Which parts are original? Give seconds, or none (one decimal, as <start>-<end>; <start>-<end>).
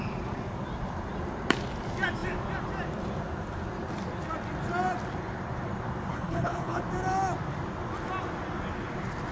0.0-6.1; 6.8-9.3